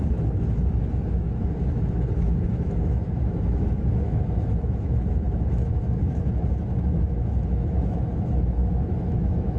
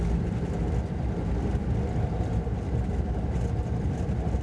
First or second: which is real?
second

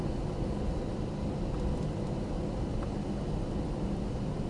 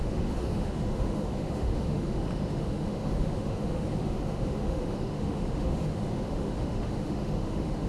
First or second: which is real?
first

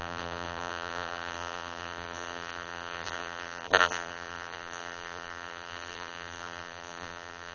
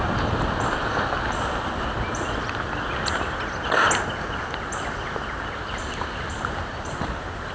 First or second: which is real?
second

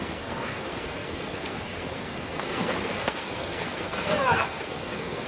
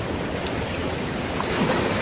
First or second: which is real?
second